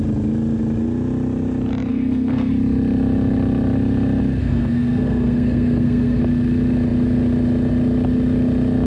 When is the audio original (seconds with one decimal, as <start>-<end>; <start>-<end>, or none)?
0.0-1.9; 2.5-4.4; 6.2-8.9